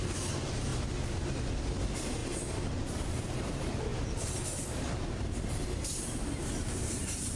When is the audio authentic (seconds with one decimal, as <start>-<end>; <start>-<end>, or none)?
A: 0.7-1.8; 2.2-2.7